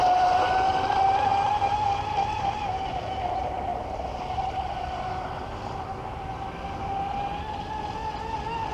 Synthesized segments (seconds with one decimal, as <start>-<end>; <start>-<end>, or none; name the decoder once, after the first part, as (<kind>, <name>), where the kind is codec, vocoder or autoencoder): none